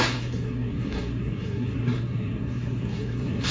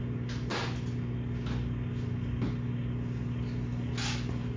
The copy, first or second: first